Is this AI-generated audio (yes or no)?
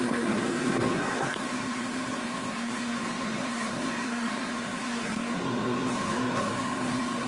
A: yes